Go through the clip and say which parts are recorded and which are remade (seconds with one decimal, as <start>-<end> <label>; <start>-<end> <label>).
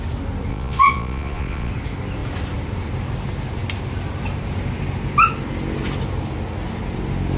0.0-0.5 recorded; 0.5-1.7 remade; 1.7-7.4 recorded